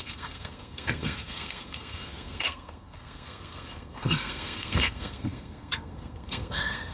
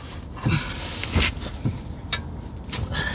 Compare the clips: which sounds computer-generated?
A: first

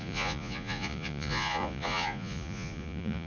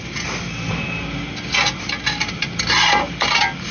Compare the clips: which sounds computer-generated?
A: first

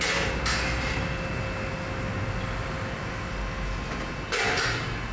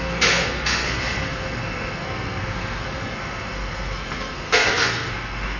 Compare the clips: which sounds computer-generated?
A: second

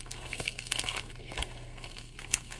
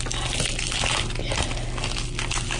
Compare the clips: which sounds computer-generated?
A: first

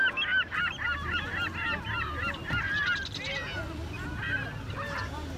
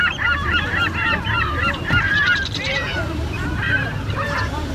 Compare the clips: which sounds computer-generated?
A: second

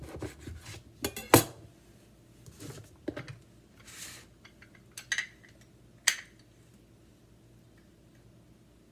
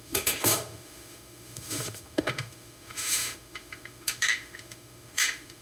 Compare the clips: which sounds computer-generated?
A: second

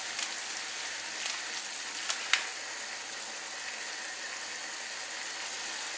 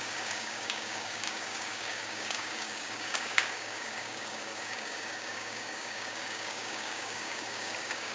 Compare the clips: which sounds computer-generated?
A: second